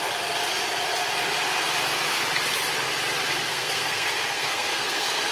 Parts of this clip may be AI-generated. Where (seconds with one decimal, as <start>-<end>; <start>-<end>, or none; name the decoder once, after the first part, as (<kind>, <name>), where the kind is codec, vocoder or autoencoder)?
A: 3.5-5.3 (codec, SNAC)

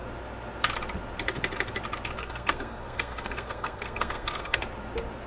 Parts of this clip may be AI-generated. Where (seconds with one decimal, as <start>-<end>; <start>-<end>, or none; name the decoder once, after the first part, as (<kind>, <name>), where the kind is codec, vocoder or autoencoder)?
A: 2.2-4.6 (codec, SNAC)

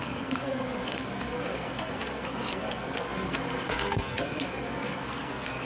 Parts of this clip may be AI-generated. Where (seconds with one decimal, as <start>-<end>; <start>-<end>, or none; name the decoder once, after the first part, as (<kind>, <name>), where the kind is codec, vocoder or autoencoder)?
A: 0.0-5.6 (codec, SNAC)

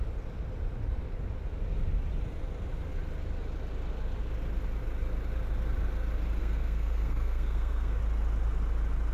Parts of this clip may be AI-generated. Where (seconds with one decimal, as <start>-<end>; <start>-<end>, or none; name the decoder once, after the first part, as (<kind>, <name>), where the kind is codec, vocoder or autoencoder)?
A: 6.4-8.0 (codec, SNAC)

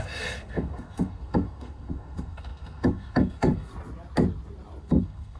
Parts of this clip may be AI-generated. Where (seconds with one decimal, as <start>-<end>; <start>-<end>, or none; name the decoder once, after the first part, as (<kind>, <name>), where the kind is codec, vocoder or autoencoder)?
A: 0.0-3.7 (codec, SNAC); 4.8-5.4

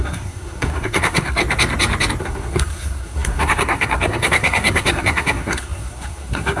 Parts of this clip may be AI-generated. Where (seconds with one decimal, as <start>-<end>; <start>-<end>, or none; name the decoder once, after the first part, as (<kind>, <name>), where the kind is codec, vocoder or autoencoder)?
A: 0.0-1.4 (codec, SNAC); 2.2-6.6

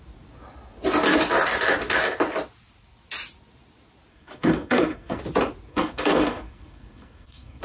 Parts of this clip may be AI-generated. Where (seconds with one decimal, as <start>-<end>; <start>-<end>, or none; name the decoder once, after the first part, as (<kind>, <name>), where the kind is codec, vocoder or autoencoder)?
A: 4.1-5.2 (codec, SNAC); 5.7-7.6